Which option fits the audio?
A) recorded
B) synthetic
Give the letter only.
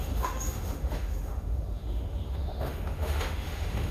B